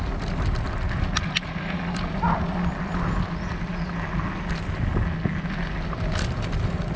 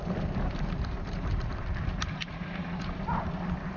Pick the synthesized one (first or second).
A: second